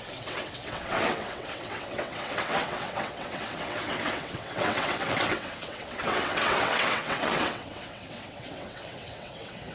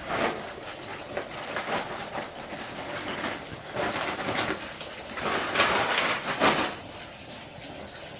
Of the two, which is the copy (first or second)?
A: first